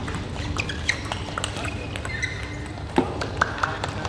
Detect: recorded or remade recorded